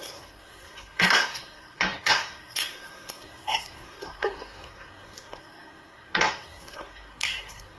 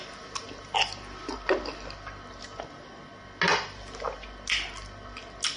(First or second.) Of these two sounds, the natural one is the second